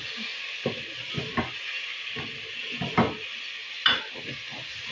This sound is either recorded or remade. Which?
recorded